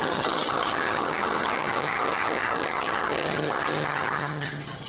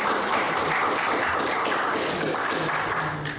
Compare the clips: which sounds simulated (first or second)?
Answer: first